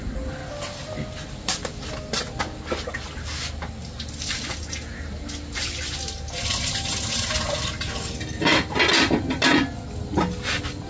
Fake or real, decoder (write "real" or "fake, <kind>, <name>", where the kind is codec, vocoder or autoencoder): real